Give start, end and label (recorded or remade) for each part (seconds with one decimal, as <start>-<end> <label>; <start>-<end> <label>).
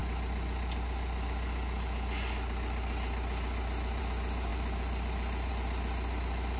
0.0-6.6 recorded